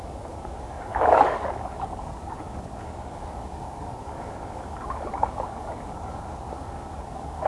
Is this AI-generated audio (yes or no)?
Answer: yes